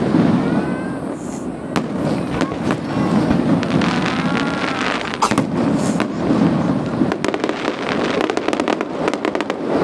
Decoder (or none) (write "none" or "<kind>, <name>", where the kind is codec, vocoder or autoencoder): none